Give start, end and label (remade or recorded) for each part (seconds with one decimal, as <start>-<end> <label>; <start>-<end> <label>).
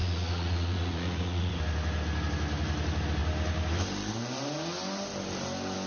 0.0-1.5 remade; 1.5-5.9 recorded